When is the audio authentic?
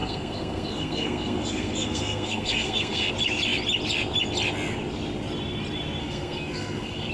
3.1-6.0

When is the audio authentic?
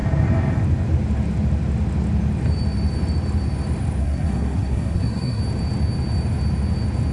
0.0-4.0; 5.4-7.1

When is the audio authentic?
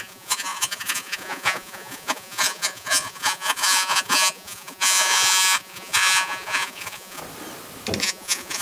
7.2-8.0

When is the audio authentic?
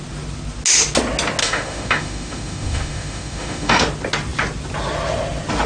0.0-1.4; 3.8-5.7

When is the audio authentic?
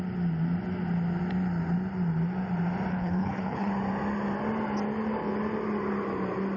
0.0-2.9; 3.7-6.6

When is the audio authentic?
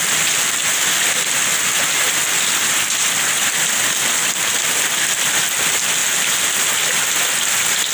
0.0-7.9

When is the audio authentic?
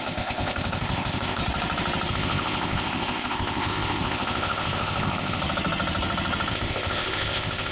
1.4-2.1; 5.4-6.5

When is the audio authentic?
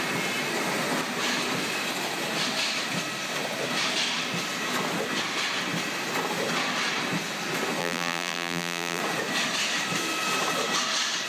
0.0-7.8; 9.0-11.3